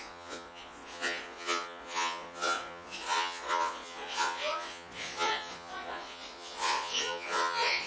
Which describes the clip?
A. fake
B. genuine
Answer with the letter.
A